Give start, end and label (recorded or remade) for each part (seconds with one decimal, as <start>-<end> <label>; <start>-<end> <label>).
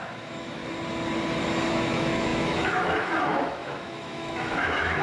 0.0-0.6 remade; 0.6-1.7 recorded; 1.7-5.0 remade